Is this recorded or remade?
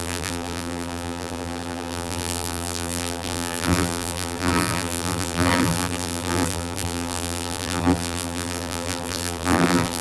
remade